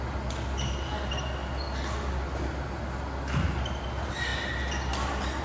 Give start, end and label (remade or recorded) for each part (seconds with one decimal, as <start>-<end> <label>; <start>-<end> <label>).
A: 0.0-5.4 recorded